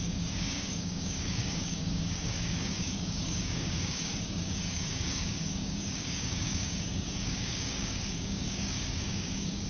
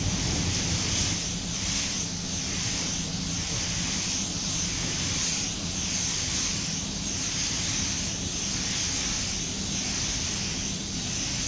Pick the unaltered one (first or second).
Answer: second